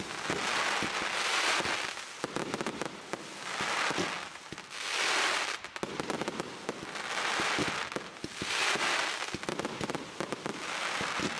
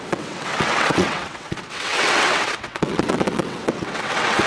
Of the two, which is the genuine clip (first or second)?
first